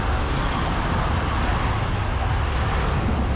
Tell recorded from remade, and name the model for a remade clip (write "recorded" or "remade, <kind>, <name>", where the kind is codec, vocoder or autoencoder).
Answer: recorded